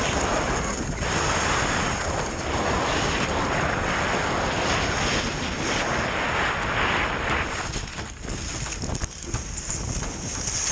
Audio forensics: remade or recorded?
recorded